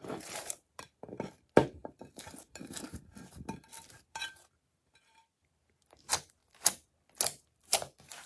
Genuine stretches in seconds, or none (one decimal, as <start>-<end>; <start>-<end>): 6.4-7.5